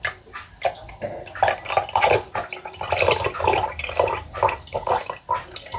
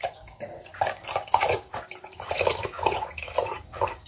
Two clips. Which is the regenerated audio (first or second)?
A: second